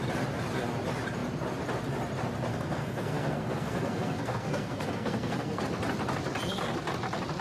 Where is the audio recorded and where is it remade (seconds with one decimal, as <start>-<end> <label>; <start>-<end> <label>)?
0.0-2.5 recorded; 2.5-5.6 remade; 5.6-7.4 recorded